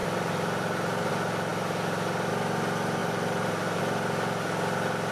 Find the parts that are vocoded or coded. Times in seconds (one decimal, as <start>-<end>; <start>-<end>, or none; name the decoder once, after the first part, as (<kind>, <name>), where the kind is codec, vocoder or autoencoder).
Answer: 0.0-1.1 (vocoder, BigVGAN v2); 3.0-3.8